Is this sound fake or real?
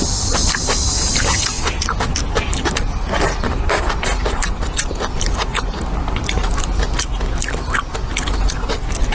real